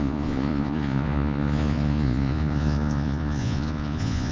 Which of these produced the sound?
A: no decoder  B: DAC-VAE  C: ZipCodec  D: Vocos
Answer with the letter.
D